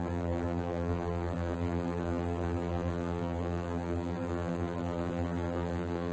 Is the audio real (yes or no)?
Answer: no